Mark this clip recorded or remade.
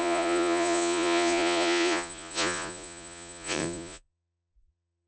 remade